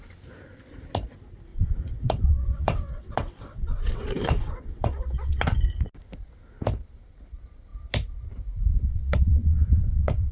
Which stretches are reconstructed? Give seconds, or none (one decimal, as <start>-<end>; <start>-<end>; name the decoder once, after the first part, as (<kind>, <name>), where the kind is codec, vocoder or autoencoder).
1.5-5.4 (vocoder, WaveNeXt); 8.7-10.3